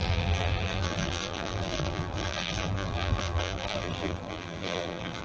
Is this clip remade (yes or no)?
yes